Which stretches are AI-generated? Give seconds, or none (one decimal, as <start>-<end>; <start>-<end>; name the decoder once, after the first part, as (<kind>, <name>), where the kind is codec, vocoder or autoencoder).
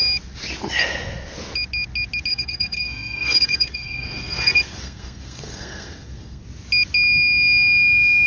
2.3-6.4 (codec, SNAC)